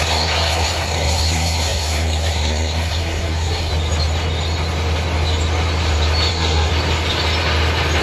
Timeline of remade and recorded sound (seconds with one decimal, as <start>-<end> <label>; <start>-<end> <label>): 0.0-3.7 remade; 3.7-6.3 recorded; 6.3-6.7 remade; 6.7-8.0 recorded